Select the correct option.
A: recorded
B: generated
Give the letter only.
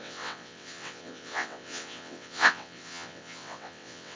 B